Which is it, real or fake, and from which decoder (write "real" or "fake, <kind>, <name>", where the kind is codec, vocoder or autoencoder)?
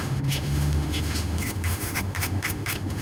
fake, autoencoder, DAC-VAE